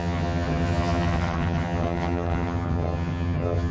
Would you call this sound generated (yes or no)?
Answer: yes